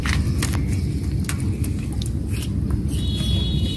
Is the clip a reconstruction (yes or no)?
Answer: no